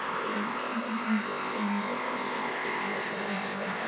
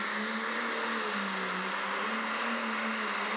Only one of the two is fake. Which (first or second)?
first